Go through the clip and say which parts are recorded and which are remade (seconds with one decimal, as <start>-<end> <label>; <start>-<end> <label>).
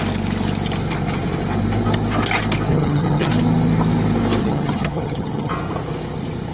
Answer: 0.0-2.7 recorded; 2.7-3.3 remade; 3.3-4.4 recorded; 4.4-5.5 remade; 5.5-6.5 recorded